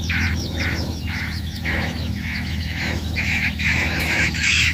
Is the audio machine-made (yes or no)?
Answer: yes